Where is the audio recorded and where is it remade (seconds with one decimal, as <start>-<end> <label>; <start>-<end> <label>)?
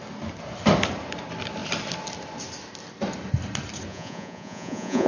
0.0-3.9 recorded; 3.9-5.1 remade